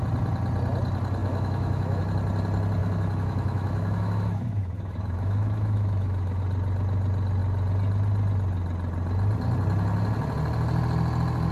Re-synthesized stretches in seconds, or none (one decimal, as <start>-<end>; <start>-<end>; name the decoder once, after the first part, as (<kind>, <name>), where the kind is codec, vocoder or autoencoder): 1.2-2.0 (autoencoder, DAC-VAE); 2.8-6.4